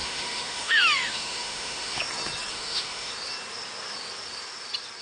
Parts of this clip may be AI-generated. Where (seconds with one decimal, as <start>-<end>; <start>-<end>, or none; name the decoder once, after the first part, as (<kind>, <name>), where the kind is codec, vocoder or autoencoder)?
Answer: 0.0-2.0 (autoencoder, DAC-VAE); 2.5-3.1

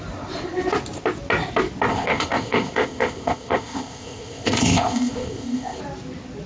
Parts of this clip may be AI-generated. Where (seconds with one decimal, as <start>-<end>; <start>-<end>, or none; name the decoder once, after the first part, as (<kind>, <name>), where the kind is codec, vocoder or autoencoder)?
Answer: 1.9-5.8 (codec, ZipCodec)

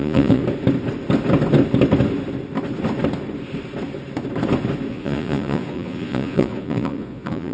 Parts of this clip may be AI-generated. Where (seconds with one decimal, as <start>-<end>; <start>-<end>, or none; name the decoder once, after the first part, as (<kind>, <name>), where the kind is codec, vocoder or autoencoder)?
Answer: 0.0-0.4 (vocoder, Vocos); 4.9-7.5

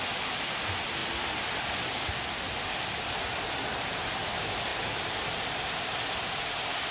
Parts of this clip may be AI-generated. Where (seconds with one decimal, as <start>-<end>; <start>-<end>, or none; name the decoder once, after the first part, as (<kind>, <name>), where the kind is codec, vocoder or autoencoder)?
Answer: 0.0-1.0 (vocoder, BigVGAN v2); 4.0-6.9

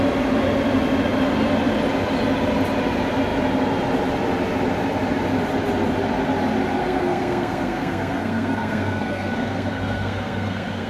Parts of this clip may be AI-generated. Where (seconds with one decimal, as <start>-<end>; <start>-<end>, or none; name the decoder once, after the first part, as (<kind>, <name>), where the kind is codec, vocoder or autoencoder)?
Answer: 6.8-10.9 (codec, SNAC)